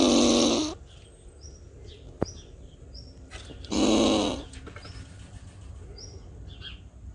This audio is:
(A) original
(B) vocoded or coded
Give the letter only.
A